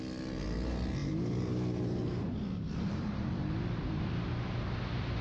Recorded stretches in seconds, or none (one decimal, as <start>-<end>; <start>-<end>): 0.0-1.0; 4.1-5.2